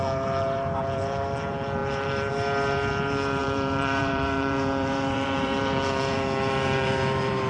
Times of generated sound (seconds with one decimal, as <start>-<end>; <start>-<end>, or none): 0.0-7.5